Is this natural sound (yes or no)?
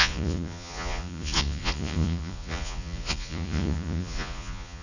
no